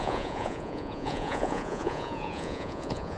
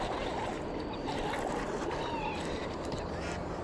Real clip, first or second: second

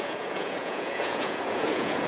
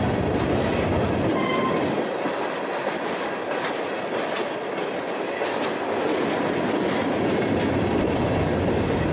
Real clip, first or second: second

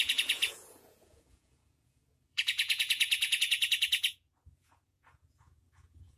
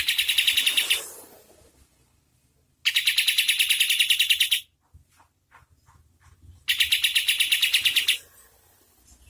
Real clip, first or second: second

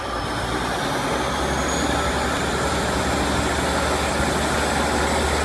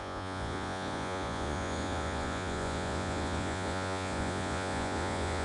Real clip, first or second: first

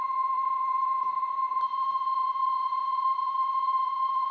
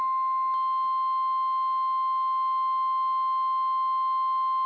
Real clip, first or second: second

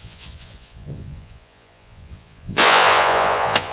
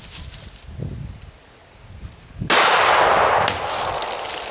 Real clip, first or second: second